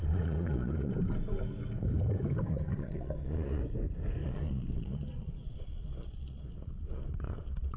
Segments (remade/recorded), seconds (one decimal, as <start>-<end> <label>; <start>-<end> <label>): 0.0-0.9 remade; 0.9-2.5 recorded; 2.5-3.6 remade; 3.6-4.2 recorded; 4.2-7.8 remade